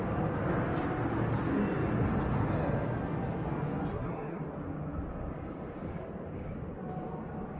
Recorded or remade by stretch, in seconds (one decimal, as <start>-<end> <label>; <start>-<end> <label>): 0.0-3.9 recorded; 3.9-4.4 remade; 4.4-7.6 recorded